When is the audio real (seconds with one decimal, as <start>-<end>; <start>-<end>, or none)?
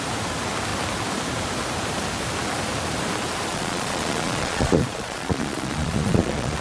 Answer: 0.0-3.5